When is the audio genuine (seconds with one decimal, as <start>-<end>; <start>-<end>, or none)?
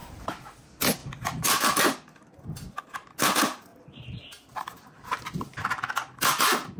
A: 0.6-3.7; 5.2-6.8